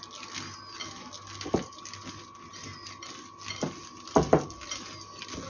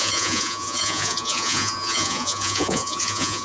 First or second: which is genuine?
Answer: first